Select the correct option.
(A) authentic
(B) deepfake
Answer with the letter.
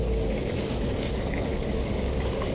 B